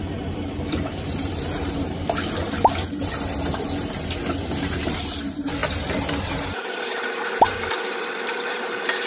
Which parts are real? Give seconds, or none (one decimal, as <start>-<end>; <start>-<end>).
none